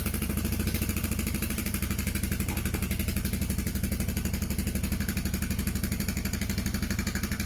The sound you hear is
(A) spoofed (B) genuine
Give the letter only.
A